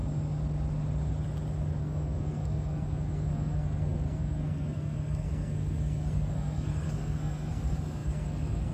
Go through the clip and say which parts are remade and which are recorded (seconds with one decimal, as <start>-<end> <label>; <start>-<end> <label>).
0.0-1.8 recorded; 1.8-8.7 remade